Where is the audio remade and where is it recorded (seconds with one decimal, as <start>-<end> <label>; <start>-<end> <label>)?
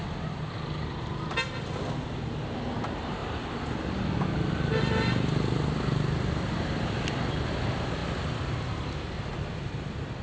0.0-10.2 recorded